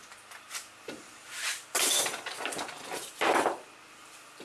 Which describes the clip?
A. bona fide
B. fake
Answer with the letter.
A